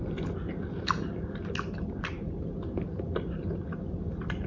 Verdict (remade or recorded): recorded